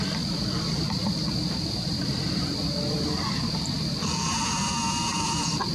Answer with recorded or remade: recorded